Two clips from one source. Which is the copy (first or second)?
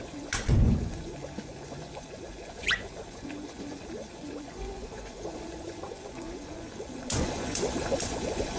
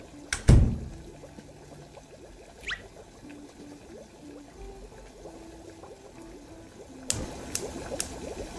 first